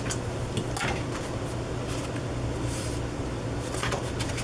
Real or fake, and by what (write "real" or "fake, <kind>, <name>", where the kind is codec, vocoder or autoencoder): real